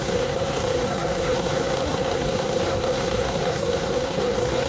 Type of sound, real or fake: fake